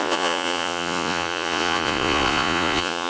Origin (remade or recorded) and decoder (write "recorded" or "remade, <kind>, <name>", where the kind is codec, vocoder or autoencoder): remade, vocoder, Vocos